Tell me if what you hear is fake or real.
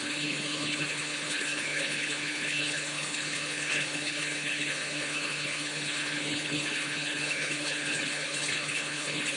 fake